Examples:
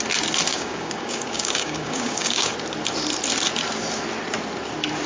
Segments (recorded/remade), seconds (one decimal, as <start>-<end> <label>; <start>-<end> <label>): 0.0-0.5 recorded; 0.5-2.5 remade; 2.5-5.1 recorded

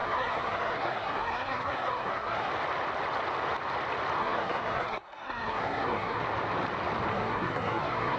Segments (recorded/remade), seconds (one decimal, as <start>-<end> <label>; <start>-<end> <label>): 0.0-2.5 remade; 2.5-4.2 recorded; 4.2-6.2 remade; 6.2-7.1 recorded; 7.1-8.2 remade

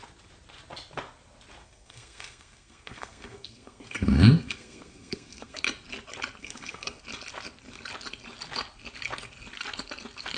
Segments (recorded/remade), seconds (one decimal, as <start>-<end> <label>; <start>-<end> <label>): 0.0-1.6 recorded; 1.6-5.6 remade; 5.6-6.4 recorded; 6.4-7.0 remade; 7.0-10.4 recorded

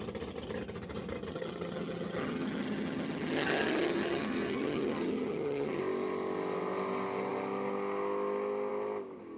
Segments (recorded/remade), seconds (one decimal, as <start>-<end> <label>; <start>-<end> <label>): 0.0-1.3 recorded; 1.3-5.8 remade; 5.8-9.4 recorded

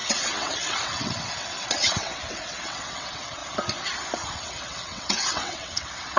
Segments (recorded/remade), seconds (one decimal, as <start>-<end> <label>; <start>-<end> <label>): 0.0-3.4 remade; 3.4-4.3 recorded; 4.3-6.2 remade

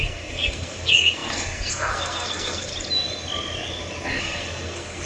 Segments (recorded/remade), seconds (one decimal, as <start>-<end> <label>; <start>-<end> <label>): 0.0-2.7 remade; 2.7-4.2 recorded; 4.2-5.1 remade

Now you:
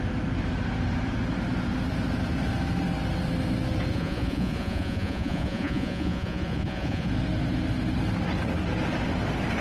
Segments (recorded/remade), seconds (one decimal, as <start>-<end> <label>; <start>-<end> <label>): 0.0-3.9 recorded; 3.9-7.1 remade; 7.1-9.6 recorded

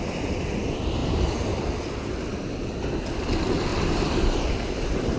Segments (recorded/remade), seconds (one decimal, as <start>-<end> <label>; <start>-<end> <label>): 0.0-3.7 recorded; 3.7-5.2 remade